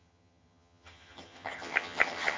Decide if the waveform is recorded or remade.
remade